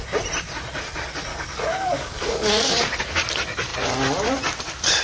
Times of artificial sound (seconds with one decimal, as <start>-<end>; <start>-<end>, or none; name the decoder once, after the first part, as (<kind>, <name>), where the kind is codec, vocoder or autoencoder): 1.3-3.0 (codec, DAC)